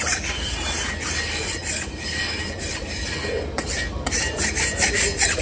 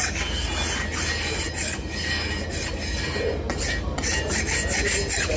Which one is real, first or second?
second